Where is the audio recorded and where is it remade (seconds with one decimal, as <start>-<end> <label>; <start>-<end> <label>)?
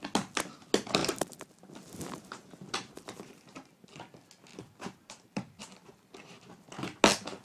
0.0-1.0 recorded; 1.0-3.7 remade; 3.7-4.5 recorded; 4.5-5.6 remade; 5.6-7.4 recorded